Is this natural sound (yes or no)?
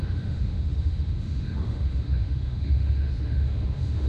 no